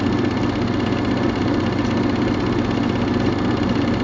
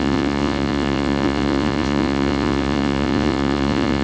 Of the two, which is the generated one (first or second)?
second